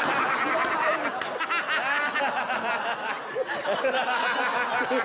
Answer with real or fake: real